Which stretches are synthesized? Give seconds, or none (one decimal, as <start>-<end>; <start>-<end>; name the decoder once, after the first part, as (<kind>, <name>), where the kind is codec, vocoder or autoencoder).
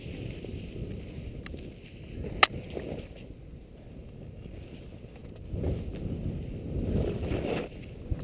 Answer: none